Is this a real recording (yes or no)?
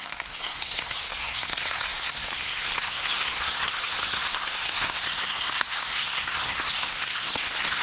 no